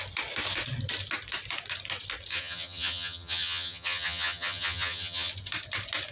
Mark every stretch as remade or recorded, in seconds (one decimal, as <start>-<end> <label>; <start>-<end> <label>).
0.0-2.3 recorded; 2.3-5.3 remade; 5.3-6.1 recorded